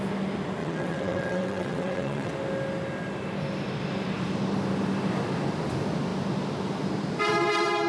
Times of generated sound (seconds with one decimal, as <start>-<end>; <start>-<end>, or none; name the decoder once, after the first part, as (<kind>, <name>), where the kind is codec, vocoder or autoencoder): 0.6-2.3 (vocoder, WaveNeXt)